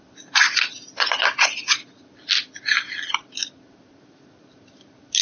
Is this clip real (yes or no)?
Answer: yes